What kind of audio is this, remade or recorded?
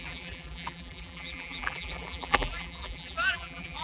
remade